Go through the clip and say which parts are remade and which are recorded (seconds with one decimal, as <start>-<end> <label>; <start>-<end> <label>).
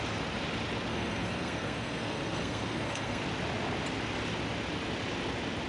0.0-0.9 recorded; 0.9-3.2 remade; 3.2-5.7 recorded